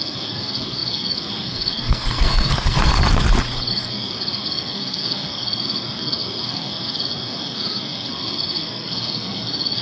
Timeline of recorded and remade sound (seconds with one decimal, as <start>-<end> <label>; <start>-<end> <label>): 0.0-2.9 remade; 2.9-3.7 recorded; 3.7-9.8 remade